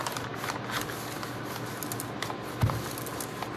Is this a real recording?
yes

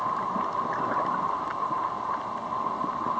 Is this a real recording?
yes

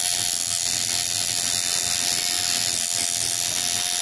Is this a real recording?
yes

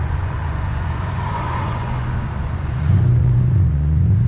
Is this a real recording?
no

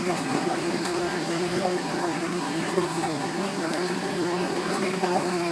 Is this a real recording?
no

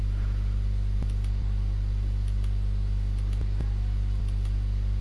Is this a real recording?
yes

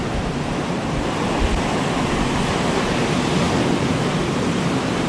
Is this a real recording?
yes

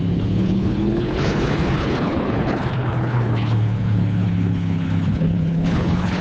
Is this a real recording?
no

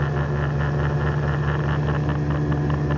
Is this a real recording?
yes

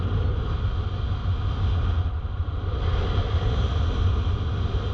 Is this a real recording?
yes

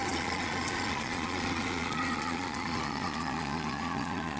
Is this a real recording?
no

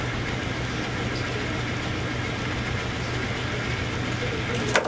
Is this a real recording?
yes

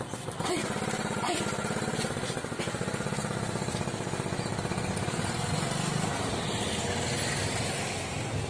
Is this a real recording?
yes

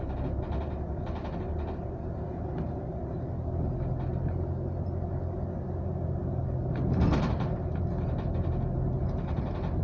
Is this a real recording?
yes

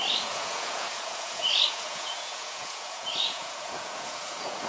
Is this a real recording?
no